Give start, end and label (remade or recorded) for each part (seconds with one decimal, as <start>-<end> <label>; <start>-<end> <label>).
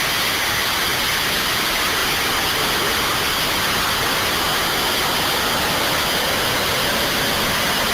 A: 0.0-7.9 recorded